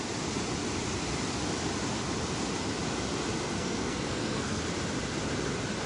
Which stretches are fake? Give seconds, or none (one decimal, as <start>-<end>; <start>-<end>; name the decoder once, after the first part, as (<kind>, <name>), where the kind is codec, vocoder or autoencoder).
3.5-4.6 (codec, SNAC)